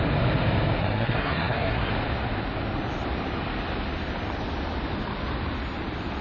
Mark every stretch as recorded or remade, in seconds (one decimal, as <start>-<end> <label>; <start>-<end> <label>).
0.0-0.8 recorded; 0.8-1.9 remade; 1.9-6.2 recorded